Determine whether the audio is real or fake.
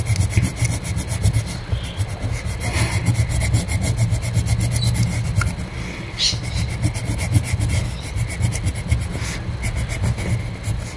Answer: real